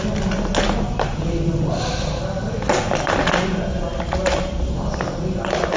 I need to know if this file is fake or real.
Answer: real